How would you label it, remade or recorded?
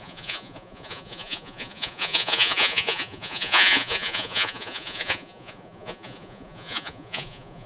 remade